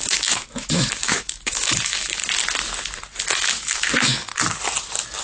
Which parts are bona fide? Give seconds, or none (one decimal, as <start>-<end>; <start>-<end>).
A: 2.2-3.3; 4.3-5.2